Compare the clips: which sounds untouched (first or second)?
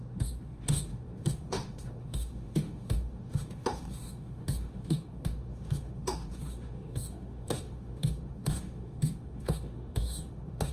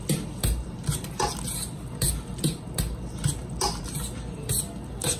second